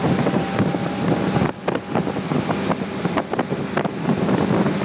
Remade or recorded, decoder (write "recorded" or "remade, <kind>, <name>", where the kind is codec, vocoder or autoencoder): recorded